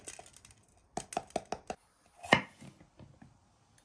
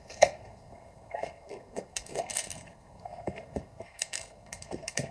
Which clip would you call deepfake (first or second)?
second